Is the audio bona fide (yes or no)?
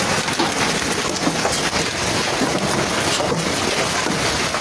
yes